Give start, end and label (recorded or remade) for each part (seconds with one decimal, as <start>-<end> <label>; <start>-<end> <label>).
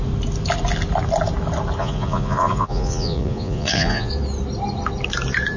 0.0-1.8 recorded; 1.8-4.1 remade; 4.1-5.6 recorded